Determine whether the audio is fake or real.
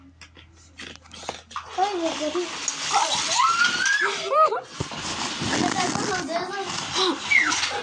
real